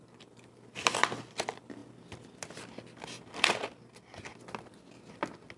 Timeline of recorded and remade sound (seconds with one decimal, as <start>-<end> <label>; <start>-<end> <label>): 0.0-1.8 remade; 1.8-5.6 recorded